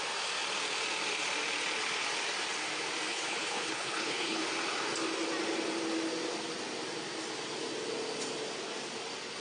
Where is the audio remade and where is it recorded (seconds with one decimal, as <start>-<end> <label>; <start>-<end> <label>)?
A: 0.0-3.1 recorded; 3.1-4.4 remade; 4.4-9.4 recorded